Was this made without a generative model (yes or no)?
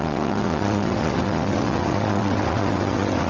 no